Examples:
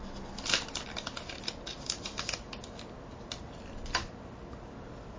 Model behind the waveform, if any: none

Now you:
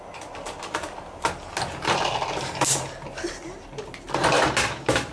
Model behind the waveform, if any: none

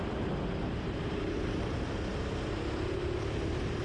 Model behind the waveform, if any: none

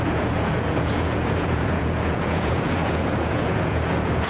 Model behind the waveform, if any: vocoder, Vocos